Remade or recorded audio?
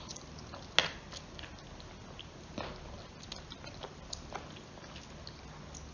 recorded